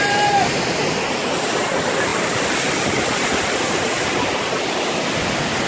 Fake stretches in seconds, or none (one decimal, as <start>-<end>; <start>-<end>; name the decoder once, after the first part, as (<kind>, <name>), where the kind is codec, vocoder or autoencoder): none